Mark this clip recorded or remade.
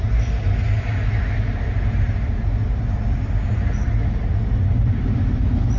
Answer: recorded